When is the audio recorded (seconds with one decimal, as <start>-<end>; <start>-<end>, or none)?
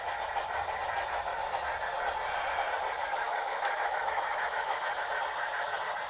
0.0-3.0; 5.2-6.1